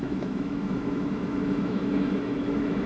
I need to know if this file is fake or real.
fake